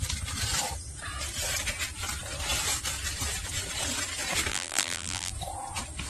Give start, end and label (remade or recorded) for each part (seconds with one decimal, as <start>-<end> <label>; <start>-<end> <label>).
0.0-4.5 recorded; 4.5-5.3 remade; 5.3-6.1 recorded